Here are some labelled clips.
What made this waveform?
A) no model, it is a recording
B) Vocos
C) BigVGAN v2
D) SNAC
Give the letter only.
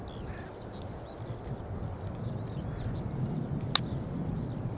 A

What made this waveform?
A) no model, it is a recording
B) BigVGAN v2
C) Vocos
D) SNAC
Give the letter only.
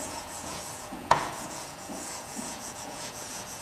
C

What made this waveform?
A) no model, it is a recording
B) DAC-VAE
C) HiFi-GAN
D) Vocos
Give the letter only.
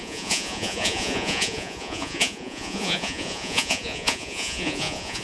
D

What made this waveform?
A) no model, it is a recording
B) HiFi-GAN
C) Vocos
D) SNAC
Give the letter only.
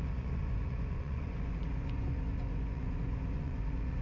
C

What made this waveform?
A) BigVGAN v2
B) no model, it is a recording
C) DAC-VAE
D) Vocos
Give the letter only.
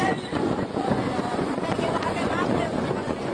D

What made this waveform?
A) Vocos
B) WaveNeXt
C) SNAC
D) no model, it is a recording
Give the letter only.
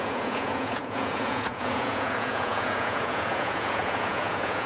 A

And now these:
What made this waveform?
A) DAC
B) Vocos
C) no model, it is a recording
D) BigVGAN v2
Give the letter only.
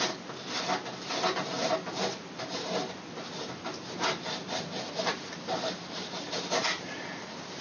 C